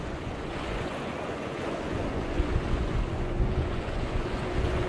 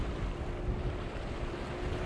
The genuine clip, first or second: second